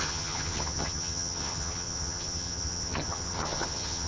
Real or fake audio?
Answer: fake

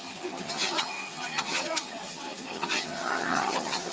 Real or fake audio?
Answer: fake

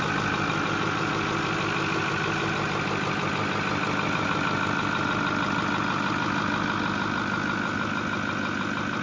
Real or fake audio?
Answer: real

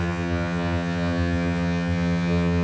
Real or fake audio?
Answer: fake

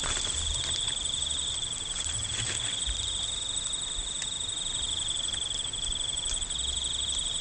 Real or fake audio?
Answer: real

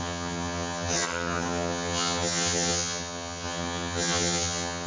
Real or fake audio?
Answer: fake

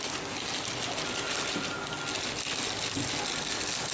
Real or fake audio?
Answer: real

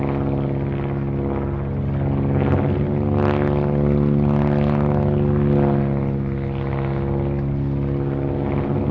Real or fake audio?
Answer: real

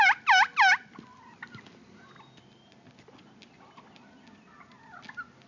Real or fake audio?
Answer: real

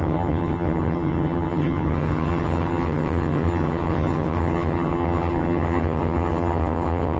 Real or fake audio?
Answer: fake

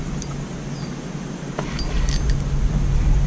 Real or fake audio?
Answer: real